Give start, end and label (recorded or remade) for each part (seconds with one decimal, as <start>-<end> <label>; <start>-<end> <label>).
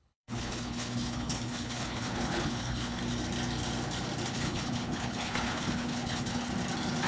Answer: 0.0-3.0 remade; 3.0-4.3 recorded; 4.3-6.5 remade; 6.5-7.1 recorded